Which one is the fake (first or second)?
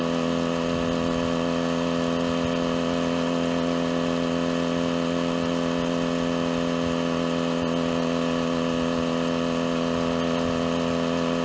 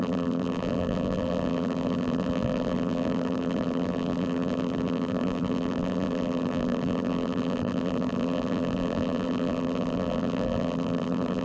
second